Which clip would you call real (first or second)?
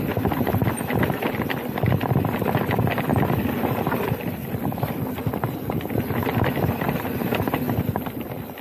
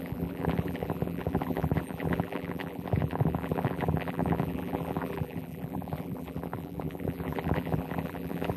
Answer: first